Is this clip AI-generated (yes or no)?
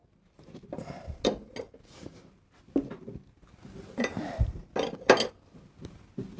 no